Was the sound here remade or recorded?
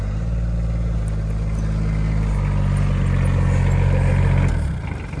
recorded